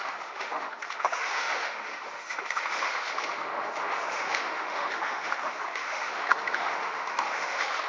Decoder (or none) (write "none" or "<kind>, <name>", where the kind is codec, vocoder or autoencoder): autoencoder, DAC-VAE